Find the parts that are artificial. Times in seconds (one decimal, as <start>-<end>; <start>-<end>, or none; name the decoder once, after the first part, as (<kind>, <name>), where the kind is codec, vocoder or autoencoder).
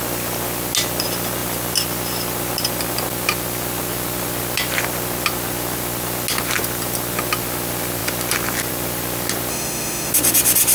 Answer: 9.5-10.1 (autoencoder, DAC-VAE)